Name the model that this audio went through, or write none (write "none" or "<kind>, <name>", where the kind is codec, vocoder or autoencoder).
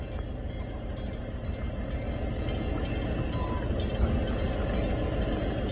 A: none